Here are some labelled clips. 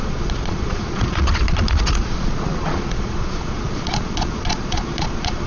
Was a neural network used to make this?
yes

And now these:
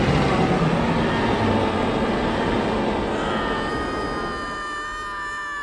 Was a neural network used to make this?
no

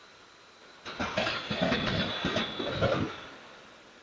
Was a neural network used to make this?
no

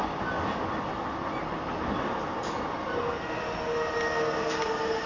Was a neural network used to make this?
no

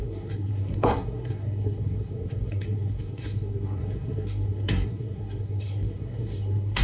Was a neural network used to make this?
yes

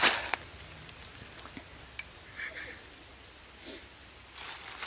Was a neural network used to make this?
no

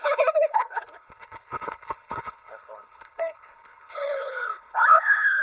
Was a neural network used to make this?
yes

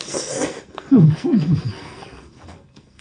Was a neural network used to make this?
yes